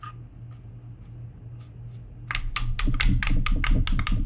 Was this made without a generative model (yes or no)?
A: yes